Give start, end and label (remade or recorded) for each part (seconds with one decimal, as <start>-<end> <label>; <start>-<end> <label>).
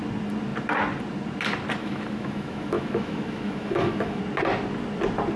0.0-1.8 recorded; 1.8-4.2 remade; 4.2-5.4 recorded